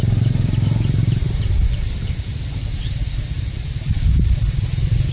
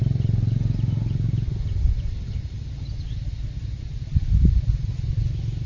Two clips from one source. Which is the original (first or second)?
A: second